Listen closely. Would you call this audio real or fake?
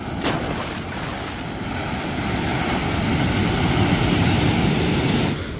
real